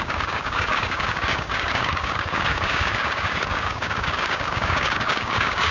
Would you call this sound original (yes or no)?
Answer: no